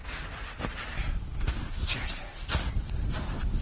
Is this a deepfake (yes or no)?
no